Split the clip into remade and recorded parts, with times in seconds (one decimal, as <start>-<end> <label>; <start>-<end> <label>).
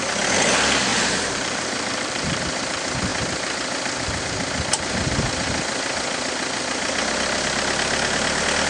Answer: 0.0-0.9 recorded; 0.9-2.4 remade; 2.4-8.7 recorded